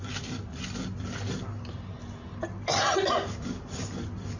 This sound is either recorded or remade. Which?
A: recorded